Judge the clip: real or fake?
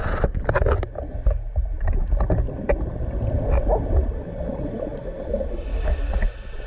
real